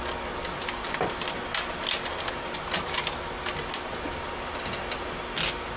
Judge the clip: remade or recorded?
recorded